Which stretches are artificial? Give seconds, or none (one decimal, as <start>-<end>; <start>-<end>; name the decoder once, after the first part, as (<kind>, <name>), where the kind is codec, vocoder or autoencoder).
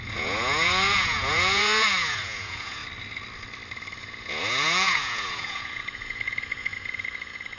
0.0-2.8 (vocoder, Vocos); 4.0-7.6